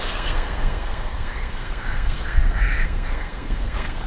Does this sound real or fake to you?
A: fake